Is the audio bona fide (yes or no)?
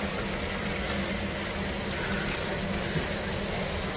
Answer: yes